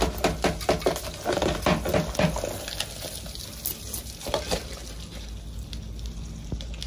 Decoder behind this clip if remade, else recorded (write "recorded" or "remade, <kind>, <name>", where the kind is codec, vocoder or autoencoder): recorded